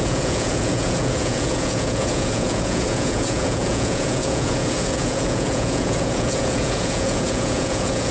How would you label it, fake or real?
fake